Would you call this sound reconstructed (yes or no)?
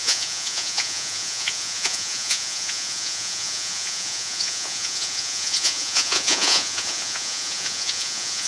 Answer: yes